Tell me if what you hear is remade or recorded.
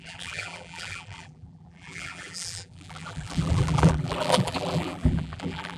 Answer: remade